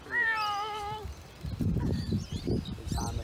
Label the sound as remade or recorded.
remade